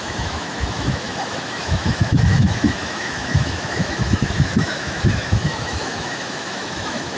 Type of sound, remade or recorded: remade